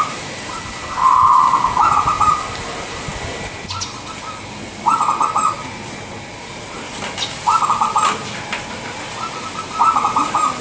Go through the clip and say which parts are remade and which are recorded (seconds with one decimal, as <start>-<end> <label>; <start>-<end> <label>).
0.0-10.6 recorded